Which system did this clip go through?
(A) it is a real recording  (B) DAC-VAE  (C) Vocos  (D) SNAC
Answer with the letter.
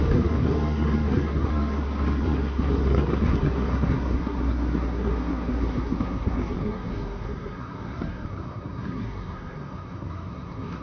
D